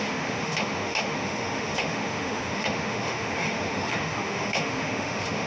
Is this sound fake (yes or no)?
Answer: yes